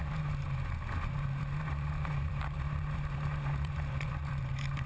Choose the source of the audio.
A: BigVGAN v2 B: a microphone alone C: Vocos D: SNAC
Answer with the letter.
A